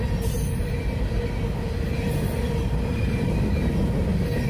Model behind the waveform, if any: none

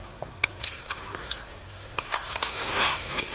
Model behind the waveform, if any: codec, SNAC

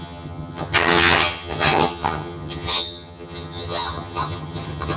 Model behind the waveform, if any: vocoder, HiFi-GAN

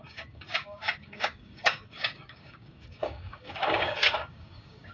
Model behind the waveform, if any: codec, DAC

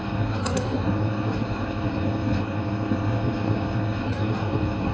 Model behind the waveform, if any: codec, SNAC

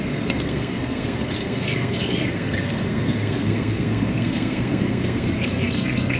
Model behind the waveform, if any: codec, SNAC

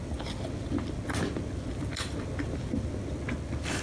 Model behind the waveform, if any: none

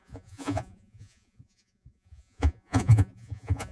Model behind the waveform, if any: vocoder, Vocos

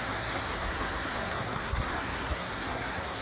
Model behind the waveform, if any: codec, SNAC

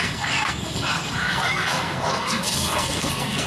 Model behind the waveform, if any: codec, SNAC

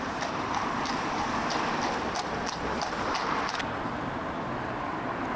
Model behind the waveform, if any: vocoder, BigVGAN v2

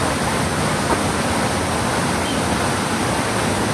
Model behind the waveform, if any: none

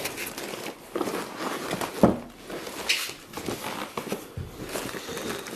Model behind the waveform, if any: none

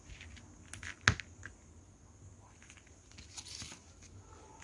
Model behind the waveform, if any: none